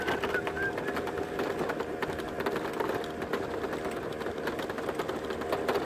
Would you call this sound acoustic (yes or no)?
yes